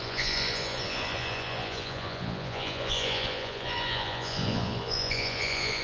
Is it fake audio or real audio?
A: fake